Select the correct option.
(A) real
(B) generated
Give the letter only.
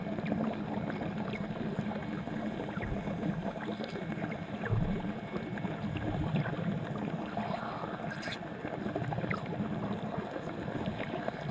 A